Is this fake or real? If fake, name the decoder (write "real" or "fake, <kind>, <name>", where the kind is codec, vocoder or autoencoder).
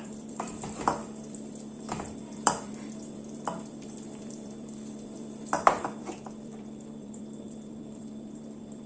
fake, vocoder, BigVGAN v2